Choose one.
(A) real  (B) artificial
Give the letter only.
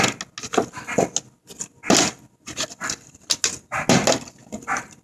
A